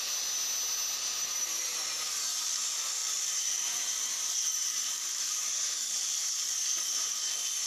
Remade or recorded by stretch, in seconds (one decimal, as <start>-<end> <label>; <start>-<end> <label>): 0.0-3.0 recorded; 3.0-7.2 remade; 7.2-7.7 recorded